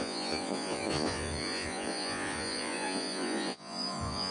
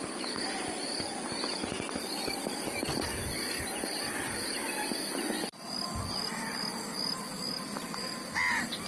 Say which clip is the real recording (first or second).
second